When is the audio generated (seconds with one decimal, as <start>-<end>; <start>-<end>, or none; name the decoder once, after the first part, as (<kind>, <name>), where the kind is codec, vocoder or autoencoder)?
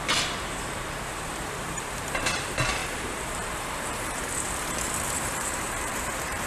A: 0.0-6.5 (vocoder, BigVGAN v2)